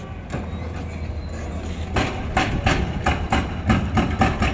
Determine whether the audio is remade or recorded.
recorded